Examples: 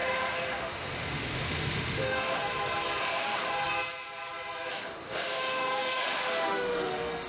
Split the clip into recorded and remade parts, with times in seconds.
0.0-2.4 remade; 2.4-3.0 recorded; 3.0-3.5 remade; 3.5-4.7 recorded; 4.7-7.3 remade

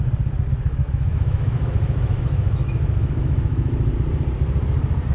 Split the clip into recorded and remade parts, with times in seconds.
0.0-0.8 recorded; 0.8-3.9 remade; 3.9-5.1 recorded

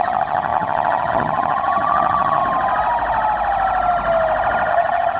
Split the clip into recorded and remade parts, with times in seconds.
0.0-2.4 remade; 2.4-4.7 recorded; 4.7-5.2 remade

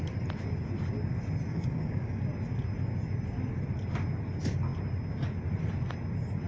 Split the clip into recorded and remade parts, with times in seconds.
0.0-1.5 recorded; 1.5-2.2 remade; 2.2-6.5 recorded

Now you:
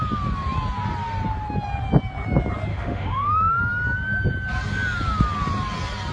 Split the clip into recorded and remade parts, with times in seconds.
0.0-2.7 recorded; 2.7-3.6 remade; 3.6-6.1 recorded

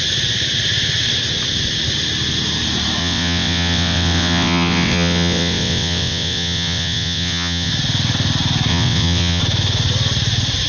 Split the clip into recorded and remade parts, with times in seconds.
0.0-3.0 recorded; 3.0-7.7 remade; 7.7-8.7 recorded; 8.7-9.4 remade; 9.4-10.7 recorded